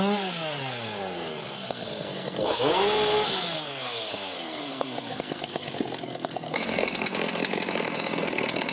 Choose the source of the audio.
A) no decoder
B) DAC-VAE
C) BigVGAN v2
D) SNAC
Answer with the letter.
D